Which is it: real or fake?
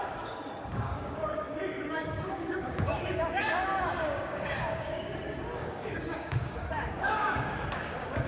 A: fake